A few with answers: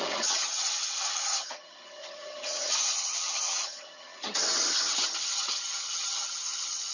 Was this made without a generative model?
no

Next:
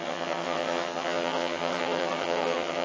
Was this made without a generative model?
no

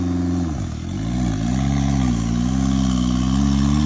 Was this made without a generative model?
yes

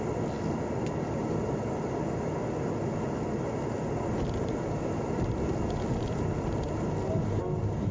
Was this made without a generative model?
yes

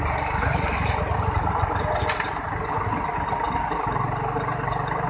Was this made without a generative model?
yes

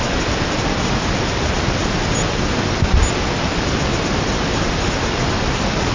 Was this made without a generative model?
yes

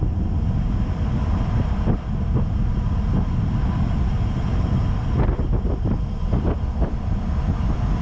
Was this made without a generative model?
yes